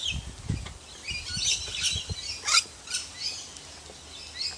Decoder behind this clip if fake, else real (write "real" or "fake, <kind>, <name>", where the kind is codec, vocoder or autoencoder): real